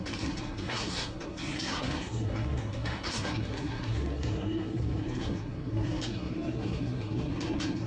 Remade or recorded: remade